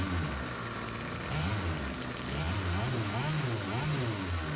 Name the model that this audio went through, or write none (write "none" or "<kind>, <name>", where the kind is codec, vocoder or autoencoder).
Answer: none